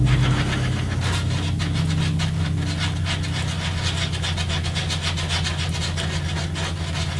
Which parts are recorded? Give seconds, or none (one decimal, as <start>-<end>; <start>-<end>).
0.0-7.2